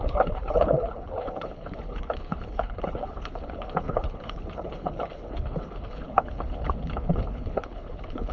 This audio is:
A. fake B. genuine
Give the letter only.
A